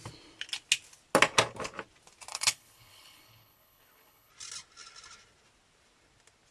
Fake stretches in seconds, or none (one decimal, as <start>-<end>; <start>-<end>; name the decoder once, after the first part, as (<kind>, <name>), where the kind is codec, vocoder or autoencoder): 2.3-4.3 (codec, HILCodec)